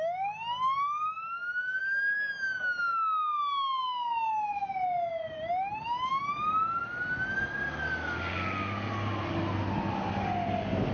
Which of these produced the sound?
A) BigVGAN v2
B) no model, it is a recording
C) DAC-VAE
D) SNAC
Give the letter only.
B